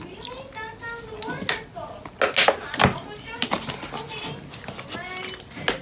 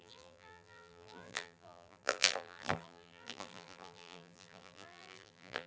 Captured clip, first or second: first